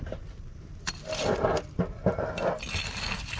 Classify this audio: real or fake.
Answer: real